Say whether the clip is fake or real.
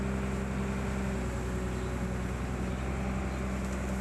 real